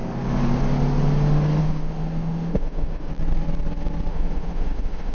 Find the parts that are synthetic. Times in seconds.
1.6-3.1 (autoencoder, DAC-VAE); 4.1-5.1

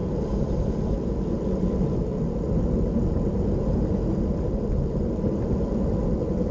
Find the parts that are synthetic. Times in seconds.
none

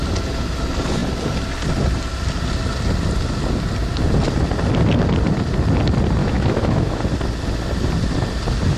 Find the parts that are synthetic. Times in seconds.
6.2-7.0 (autoencoder, DAC-VAE)

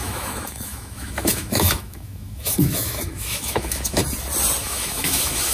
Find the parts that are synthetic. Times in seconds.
0.0-4.0 (autoencoder, DAC-VAE); 4.6-5.5

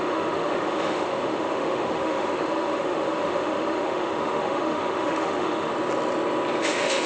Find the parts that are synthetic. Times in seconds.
0.0-5.7 (autoencoder, DAC-VAE); 6.6-7.1

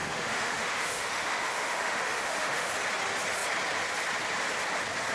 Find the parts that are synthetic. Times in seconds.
0.0-2.7 (autoencoder, DAC-VAE)